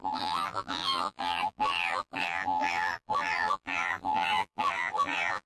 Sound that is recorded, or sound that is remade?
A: remade